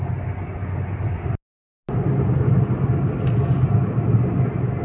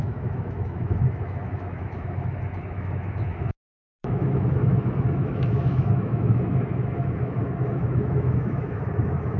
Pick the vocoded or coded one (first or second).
second